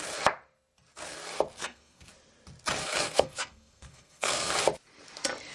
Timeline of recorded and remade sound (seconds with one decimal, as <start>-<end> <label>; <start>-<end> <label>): 0.0-1.6 recorded; 1.6-2.1 remade; 2.1-2.8 recorded; 2.8-4.5 remade; 4.5-5.5 recorded